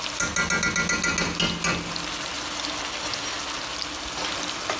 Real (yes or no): yes